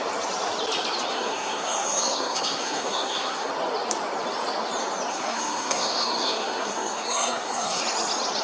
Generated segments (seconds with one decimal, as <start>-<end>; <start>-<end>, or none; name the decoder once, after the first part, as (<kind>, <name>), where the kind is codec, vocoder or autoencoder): 1.1-3.5 (codec, SNAC); 5.1-7.8

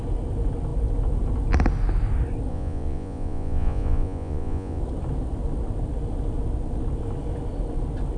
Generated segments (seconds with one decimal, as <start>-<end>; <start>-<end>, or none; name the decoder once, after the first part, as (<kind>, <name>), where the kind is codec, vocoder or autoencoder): 2.5-4.8 (vocoder, Vocos)

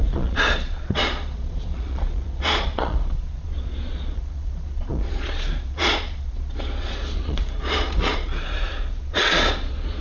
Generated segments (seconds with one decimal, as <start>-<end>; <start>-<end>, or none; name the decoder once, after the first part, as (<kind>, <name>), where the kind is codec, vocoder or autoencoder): 0.0-10.0 (vocoder, Vocos)

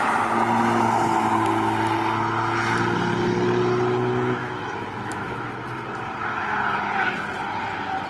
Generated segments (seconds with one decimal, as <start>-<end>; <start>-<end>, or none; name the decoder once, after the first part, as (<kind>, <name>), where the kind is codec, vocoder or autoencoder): 4.4-5.5 (autoencoder, DAC-VAE)

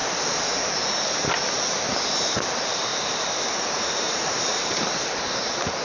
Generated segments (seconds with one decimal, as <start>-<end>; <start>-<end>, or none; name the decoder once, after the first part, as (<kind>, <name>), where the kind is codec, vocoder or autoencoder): 2.9-4.4 (vocoder, BigVGAN v2)

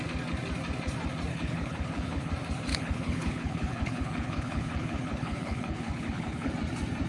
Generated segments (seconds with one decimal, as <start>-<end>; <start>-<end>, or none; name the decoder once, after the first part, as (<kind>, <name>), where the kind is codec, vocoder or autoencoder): 1.3-2.3 (codec, HILCodec); 2.7-6.5

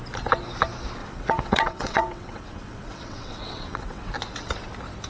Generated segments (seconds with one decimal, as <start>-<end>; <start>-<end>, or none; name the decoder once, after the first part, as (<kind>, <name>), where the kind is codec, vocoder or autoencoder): 1.0-4.1 (vocoder, WaveNeXt)

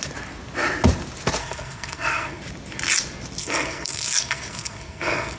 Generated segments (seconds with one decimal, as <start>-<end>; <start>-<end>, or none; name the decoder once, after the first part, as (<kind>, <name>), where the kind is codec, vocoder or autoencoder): 1.4-2.4 (codec, SNAC); 3.4-5.4